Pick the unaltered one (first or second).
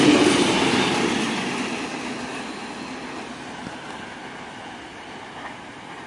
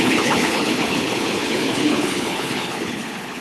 first